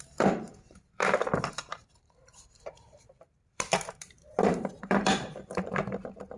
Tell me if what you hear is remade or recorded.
remade